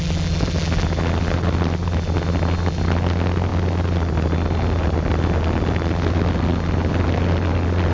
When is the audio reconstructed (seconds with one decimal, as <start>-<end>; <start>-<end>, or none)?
none